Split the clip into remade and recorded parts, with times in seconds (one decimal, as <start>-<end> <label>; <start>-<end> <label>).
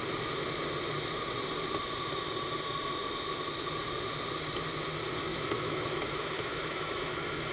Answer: 0.0-5.3 recorded; 5.3-7.5 remade